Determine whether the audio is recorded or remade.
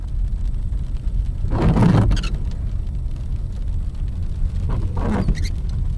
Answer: recorded